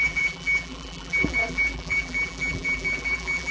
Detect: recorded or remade remade